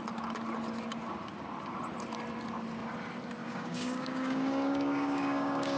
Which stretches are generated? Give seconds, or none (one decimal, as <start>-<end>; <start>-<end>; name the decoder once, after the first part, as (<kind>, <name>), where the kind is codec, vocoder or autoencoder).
3.4-5.8 (codec, DAC)